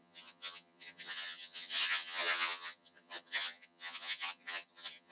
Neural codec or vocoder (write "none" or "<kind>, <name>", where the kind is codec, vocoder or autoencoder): vocoder, HiFi-GAN